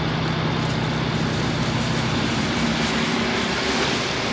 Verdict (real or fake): real